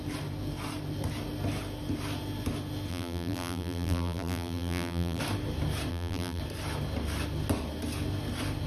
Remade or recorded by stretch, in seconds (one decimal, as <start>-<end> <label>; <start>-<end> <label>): 0.0-2.9 recorded; 2.9-5.2 remade; 5.2-5.9 recorded; 5.9-6.4 remade; 6.4-8.7 recorded